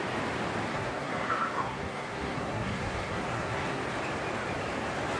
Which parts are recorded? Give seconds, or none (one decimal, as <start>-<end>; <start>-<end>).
0.0-0.7; 3.8-5.2